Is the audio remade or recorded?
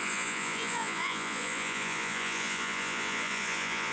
remade